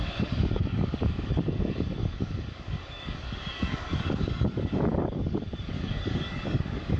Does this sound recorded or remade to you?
remade